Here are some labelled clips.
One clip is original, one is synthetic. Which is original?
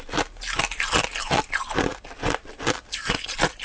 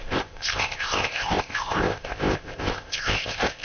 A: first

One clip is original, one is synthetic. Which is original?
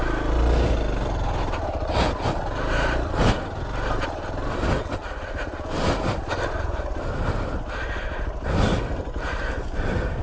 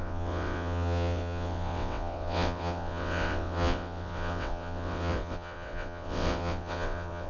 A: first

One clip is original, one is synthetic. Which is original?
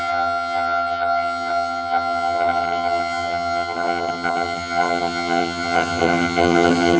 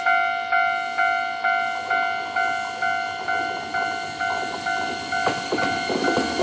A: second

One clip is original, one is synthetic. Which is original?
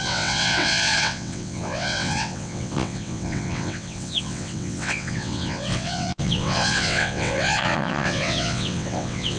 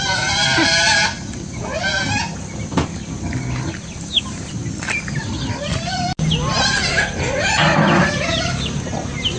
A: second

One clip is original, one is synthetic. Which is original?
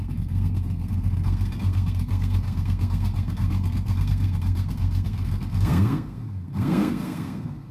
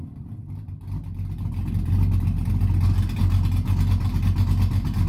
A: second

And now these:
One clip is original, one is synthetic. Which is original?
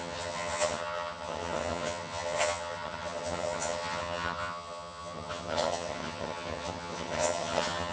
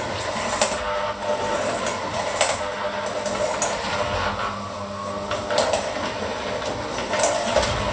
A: second